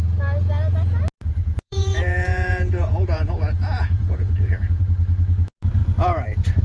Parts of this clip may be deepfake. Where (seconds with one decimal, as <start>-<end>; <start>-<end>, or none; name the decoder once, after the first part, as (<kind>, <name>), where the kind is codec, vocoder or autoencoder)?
1.3-4.8 (vocoder, Vocos)